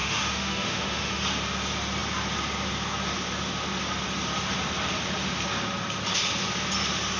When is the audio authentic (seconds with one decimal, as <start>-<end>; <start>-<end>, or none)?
1.2-7.2